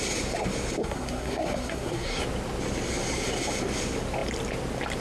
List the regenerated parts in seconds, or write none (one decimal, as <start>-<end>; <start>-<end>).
0.8-2.2